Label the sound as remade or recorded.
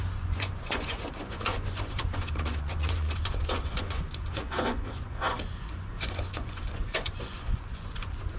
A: remade